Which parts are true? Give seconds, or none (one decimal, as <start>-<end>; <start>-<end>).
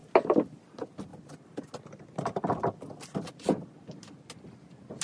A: 0.0-5.0